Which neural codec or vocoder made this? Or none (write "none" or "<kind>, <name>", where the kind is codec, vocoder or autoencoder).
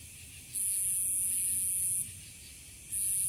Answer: none